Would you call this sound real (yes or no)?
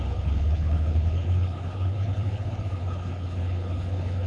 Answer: no